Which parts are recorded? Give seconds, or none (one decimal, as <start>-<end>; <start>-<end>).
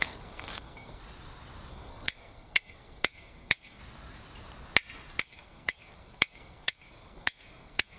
1.0-1.7; 3.8-5.2